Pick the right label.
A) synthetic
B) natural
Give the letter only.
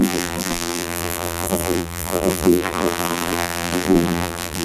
A